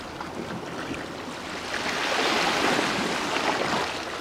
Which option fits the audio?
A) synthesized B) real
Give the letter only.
B